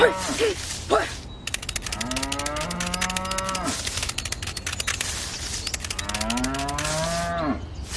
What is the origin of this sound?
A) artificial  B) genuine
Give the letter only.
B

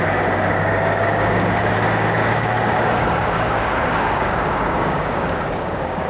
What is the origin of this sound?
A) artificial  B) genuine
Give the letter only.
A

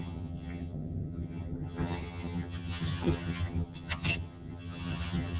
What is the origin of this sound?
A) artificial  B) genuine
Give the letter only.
A